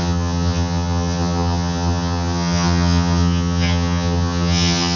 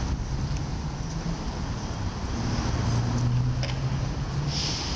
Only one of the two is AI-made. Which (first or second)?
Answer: first